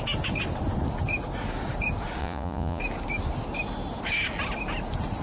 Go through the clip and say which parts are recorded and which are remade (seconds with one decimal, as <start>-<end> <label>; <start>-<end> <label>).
0.0-2.2 recorded; 2.2-2.8 remade; 2.8-5.2 recorded